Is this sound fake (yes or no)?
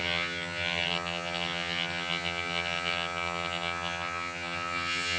yes